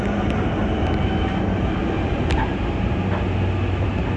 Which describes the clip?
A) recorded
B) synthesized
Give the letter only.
A